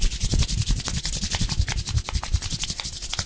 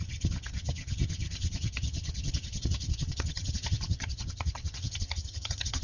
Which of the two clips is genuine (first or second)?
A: first